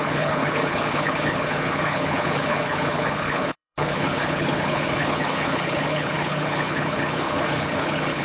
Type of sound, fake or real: fake